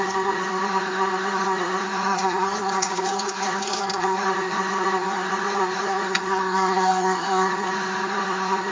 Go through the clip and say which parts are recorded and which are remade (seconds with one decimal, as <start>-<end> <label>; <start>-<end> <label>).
0.0-8.7 remade